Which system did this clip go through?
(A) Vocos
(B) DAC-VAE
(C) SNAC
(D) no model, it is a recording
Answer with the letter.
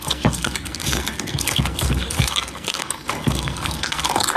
C